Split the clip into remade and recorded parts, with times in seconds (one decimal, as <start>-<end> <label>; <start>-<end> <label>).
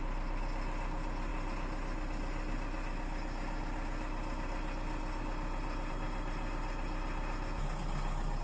0.0-8.4 recorded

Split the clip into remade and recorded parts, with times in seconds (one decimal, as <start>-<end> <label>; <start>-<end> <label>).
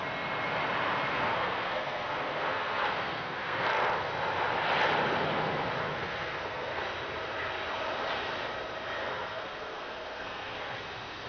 0.0-1.1 recorded; 1.1-4.1 remade; 4.1-5.8 recorded; 5.8-6.8 remade; 6.8-9.0 recorded; 9.0-10.8 remade; 10.8-11.3 recorded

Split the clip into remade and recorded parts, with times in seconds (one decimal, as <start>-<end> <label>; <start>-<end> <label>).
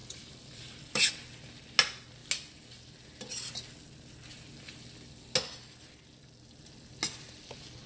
0.0-1.1 remade; 1.1-7.9 recorded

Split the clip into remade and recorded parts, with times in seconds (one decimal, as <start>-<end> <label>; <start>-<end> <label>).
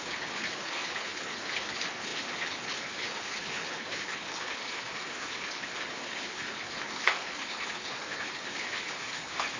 0.0-9.6 remade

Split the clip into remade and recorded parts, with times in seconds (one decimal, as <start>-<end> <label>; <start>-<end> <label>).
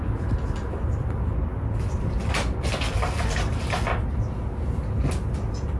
0.0-5.8 recorded